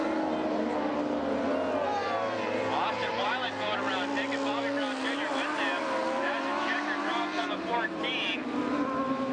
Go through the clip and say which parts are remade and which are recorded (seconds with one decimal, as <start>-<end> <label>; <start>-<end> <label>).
0.0-9.3 recorded